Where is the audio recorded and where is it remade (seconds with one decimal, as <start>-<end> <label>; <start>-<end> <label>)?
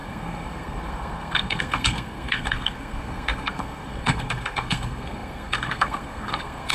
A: 0.0-6.7 remade